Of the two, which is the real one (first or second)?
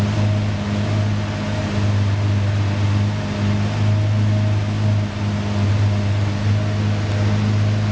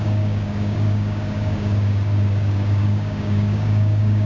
first